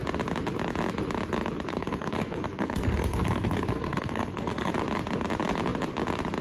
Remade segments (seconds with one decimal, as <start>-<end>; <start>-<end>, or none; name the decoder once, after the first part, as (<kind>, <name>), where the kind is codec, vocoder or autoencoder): 1.7-4.7 (codec, SNAC)